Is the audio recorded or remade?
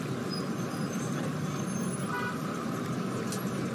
recorded